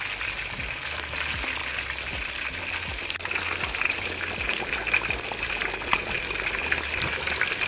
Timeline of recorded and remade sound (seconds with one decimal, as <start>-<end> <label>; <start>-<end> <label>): 0.0-7.7 recorded